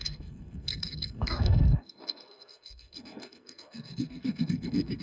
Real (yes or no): no